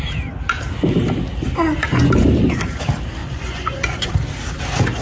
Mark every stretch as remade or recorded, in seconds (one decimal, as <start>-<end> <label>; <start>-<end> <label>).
0.0-3.2 recorded; 3.2-4.1 remade; 4.1-5.0 recorded